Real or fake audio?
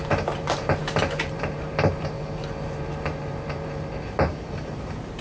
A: fake